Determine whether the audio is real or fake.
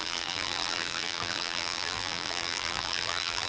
fake